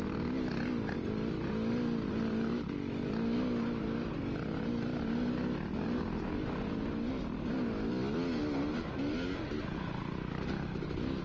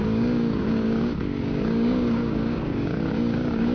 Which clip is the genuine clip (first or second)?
first